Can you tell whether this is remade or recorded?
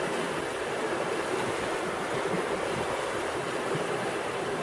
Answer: recorded